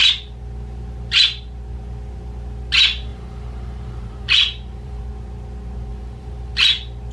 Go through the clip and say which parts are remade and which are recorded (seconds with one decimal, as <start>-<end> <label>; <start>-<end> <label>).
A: 0.0-3.1 recorded; 3.1-5.0 remade; 5.0-5.9 recorded; 5.9-6.5 remade; 6.5-7.1 recorded